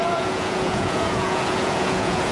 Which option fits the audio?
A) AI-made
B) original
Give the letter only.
A